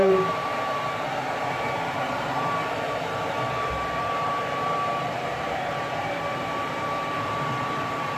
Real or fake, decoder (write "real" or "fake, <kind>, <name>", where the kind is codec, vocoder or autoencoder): fake, vocoder, BigVGAN v2